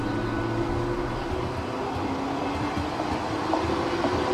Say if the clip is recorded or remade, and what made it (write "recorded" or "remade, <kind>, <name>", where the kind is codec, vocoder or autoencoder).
recorded